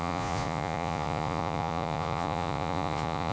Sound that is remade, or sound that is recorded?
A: remade